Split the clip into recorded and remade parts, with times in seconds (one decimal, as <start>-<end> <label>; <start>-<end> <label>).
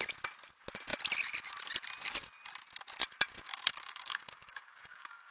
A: 0.0-3.5 recorded; 3.5-5.3 remade